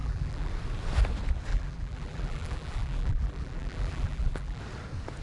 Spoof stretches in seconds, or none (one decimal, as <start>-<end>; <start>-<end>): 0.0-0.5; 1.5-4.6